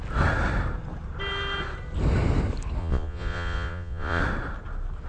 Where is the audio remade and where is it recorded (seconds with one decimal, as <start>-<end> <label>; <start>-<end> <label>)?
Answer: 0.0-2.8 recorded; 2.8-4.2 remade; 4.2-5.1 recorded